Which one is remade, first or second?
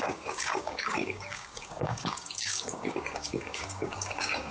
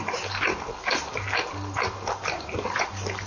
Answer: first